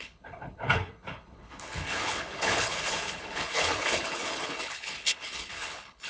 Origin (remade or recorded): remade